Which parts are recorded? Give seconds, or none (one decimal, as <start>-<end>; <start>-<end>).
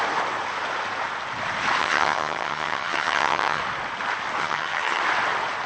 0.0-1.8; 3.6-4.4; 5.0-5.7